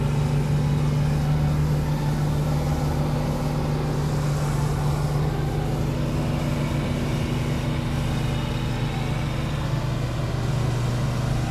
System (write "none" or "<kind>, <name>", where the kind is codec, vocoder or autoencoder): none